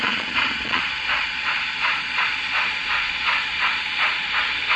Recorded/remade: remade